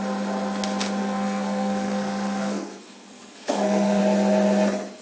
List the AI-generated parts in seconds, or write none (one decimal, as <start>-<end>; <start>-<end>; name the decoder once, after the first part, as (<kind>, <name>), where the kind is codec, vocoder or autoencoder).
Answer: 1.0-4.0 (codec, SNAC)